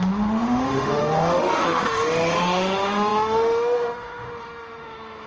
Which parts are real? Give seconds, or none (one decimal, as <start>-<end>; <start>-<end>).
none

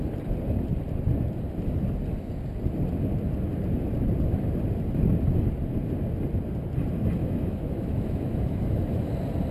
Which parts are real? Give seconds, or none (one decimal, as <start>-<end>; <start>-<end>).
0.0-7.2; 9.1-9.5